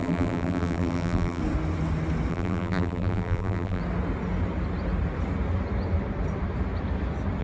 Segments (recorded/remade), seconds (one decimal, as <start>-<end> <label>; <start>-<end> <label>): 0.0-1.4 remade; 1.4-2.3 recorded; 2.3-3.8 remade; 3.8-7.4 recorded